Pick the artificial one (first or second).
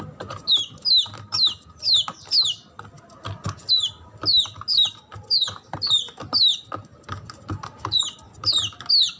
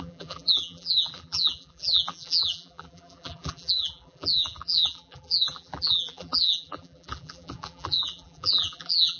second